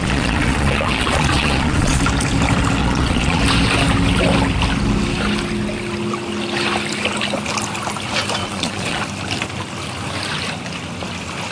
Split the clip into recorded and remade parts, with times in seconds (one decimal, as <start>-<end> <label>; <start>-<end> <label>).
0.0-2.0 remade; 2.0-2.8 recorded; 2.8-3.4 remade; 3.4-8.4 recorded; 8.4-9.0 remade; 9.0-11.5 recorded